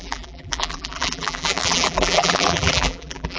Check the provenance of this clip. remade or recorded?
remade